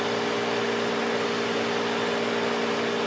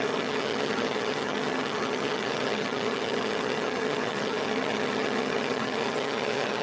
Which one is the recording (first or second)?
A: first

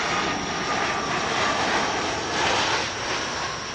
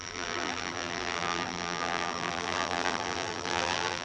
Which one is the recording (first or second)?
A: first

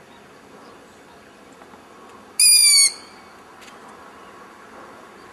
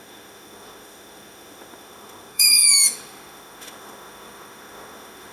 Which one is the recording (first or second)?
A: first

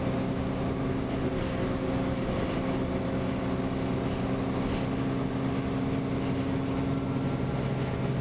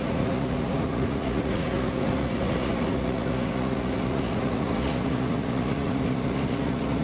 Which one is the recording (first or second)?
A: first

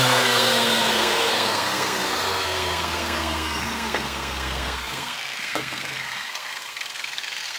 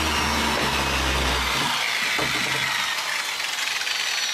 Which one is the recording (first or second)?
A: second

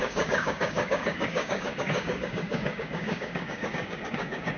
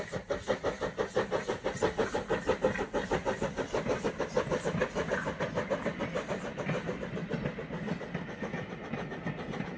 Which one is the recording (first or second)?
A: second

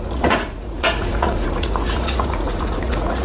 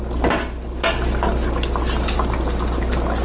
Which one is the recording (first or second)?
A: second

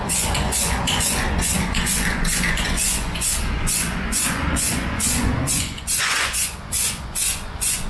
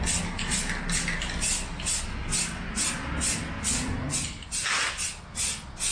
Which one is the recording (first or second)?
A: second